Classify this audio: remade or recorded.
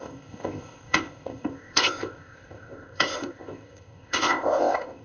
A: remade